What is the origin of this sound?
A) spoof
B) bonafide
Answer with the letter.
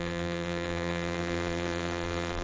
A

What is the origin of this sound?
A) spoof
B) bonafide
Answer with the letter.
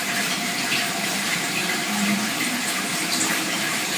A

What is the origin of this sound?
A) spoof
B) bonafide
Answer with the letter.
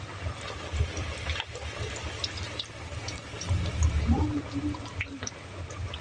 B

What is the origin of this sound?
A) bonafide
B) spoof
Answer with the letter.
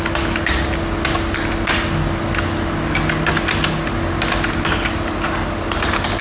A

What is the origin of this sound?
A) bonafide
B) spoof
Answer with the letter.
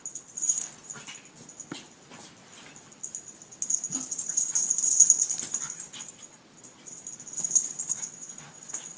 A